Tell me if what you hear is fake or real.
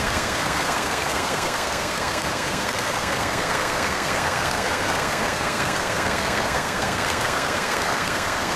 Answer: fake